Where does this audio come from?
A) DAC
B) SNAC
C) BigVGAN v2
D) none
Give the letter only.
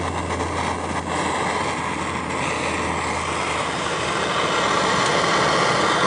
D